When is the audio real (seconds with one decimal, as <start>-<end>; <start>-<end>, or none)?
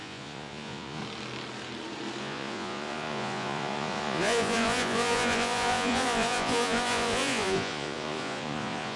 1.0-2.2